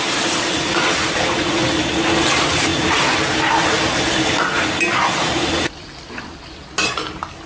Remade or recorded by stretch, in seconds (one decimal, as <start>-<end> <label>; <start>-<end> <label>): 0.0-7.5 recorded